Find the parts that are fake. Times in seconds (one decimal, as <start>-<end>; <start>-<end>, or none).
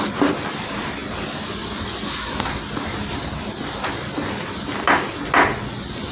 none